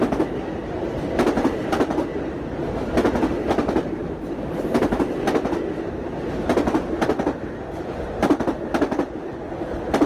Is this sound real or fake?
real